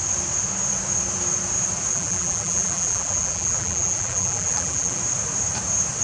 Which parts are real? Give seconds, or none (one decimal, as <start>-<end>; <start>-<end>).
0.0-1.9; 5.0-6.0